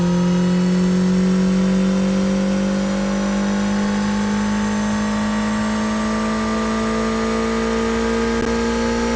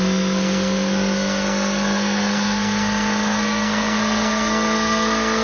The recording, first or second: first